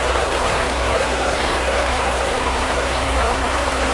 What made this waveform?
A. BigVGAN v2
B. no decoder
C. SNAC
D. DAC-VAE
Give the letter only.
C